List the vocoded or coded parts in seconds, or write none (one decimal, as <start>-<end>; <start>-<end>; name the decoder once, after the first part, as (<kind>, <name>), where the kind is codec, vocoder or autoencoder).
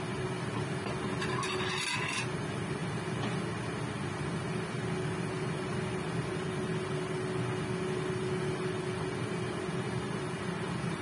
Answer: none